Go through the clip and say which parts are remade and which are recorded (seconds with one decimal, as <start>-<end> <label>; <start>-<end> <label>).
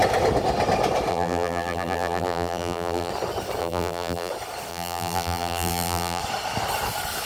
0.0-1.1 recorded; 1.1-3.1 remade; 3.1-3.6 recorded; 3.6-4.3 remade; 4.3-4.7 recorded; 4.7-6.2 remade; 6.2-7.2 recorded